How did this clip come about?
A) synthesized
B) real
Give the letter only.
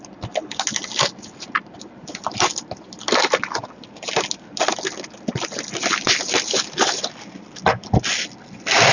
B